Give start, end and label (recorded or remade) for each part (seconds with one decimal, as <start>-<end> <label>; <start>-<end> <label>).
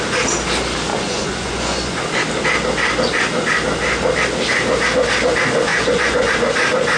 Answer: 0.0-0.9 recorded; 0.9-2.0 remade; 2.0-5.7 recorded; 5.7-6.3 remade; 6.3-7.0 recorded